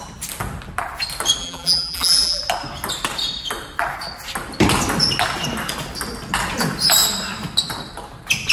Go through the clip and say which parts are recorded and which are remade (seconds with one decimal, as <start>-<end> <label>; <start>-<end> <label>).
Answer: 0.0-1.4 recorded; 1.4-2.4 remade; 2.4-8.5 recorded